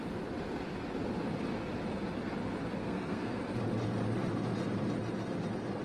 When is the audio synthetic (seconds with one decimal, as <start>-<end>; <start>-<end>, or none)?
2.8-3.4